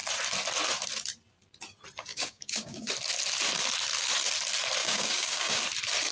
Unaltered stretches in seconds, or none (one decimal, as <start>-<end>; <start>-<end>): 0.0-2.1; 2.9-4.8; 5.6-6.1